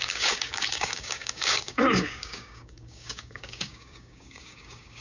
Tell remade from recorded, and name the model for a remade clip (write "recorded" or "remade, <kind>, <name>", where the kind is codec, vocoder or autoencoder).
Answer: remade, codec, DAC